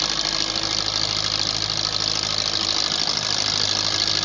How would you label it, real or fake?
real